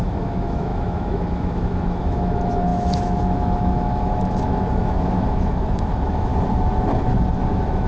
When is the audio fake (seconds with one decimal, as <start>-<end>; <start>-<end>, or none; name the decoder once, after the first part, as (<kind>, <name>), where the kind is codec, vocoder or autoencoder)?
0.0-6.3 (autoencoder, DAC-VAE); 7.5-7.9